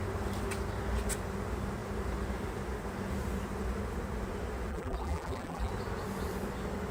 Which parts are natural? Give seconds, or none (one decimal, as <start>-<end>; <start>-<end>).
0.0-4.7; 5.7-6.9